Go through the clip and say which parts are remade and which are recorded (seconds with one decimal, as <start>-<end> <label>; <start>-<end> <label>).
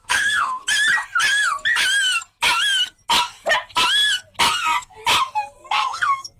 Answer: 0.0-0.6 remade; 0.6-4.4 recorded; 4.4-5.0 remade; 5.0-5.7 recorded; 5.7-6.4 remade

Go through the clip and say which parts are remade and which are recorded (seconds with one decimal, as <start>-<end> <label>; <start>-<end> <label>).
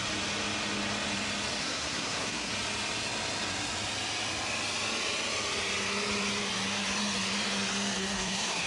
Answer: 0.0-1.6 recorded; 1.6-2.5 remade; 2.5-8.0 recorded; 8.0-8.7 remade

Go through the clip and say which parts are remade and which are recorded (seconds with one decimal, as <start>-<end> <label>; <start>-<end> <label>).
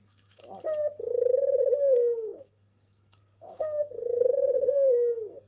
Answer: 0.0-0.4 remade; 0.4-1.9 recorded; 1.9-5.5 remade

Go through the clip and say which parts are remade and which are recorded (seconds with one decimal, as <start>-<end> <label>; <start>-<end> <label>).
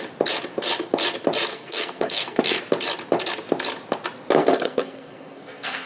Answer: 0.0-1.5 recorded; 1.5-2.6 remade; 2.6-4.4 recorded; 4.4-5.9 remade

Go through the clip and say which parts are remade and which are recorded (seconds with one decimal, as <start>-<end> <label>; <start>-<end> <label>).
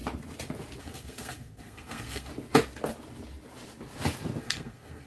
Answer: 0.0-0.8 recorded; 0.8-2.3 remade; 2.3-4.4 recorded; 4.4-5.1 remade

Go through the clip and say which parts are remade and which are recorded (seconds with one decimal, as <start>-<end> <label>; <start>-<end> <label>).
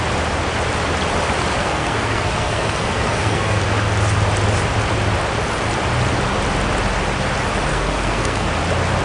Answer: 0.0-1.6 recorded; 1.6-3.6 remade; 3.6-7.7 recorded; 7.7-8.5 remade; 8.5-9.0 recorded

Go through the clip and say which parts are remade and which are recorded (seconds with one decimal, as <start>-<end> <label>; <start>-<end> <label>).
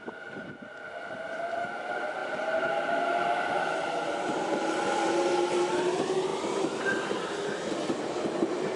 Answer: 0.0-8.8 recorded